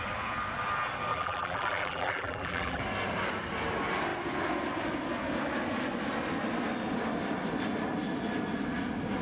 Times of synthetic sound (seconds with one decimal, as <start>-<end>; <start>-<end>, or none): 1.1-2.8